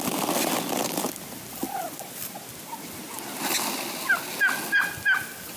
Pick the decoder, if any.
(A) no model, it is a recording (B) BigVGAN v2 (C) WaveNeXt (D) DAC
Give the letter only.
A